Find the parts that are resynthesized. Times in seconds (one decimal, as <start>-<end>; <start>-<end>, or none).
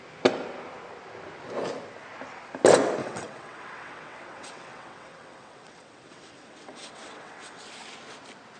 3.0-7.6